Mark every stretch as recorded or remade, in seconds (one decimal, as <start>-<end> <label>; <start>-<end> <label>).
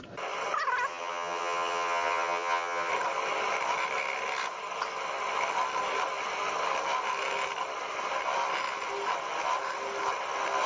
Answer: 0.0-0.9 recorded; 0.9-2.9 remade; 2.9-10.7 recorded